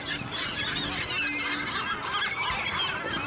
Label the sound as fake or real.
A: real